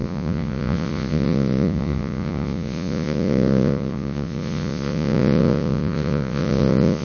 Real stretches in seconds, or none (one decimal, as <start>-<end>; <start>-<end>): none